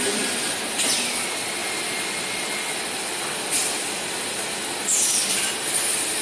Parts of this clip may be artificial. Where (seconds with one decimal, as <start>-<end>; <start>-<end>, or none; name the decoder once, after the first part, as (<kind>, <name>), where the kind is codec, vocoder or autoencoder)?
none